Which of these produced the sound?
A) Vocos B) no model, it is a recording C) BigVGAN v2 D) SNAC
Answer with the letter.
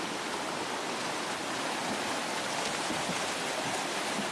B